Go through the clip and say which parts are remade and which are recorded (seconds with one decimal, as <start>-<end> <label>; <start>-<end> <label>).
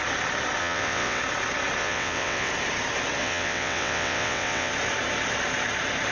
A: 0.0-0.6 recorded; 0.6-1.2 remade; 1.2-1.8 recorded; 1.8-2.5 remade; 2.5-3.2 recorded; 3.2-4.7 remade; 4.7-6.1 recorded